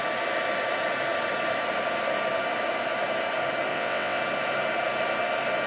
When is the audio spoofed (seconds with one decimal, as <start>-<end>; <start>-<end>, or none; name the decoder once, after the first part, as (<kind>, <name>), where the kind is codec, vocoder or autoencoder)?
3.7-4.2 (vocoder, WaveNeXt)